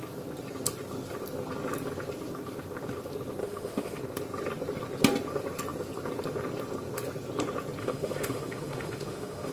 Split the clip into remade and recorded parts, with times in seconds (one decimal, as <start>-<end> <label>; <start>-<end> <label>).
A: 0.0-3.4 recorded; 3.4-4.0 remade; 4.0-7.8 recorded; 7.8-9.5 remade